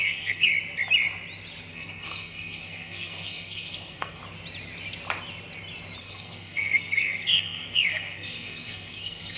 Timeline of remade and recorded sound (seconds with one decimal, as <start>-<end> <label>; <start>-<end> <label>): 0.0-0.5 remade; 0.5-1.7 recorded; 1.7-4.2 remade; 4.2-6.0 recorded; 6.0-9.4 remade